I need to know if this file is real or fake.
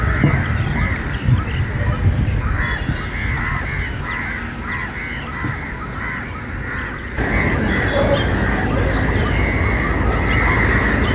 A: real